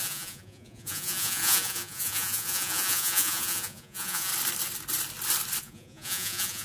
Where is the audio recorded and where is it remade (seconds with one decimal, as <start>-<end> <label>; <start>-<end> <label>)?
0.0-4.3 remade; 4.3-5.6 recorded; 5.6-6.6 remade